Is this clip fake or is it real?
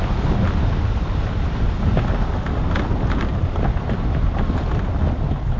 real